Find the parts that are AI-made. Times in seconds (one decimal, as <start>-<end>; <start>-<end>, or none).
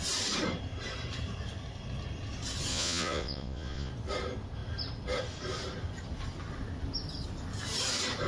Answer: 2.7-3.9